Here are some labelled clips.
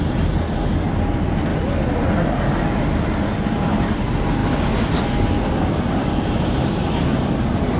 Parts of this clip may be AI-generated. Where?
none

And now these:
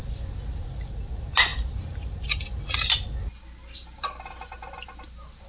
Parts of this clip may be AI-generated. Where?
none